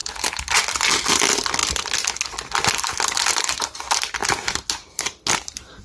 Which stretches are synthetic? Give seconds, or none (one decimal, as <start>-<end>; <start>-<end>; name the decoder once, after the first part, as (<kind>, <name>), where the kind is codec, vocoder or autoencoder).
none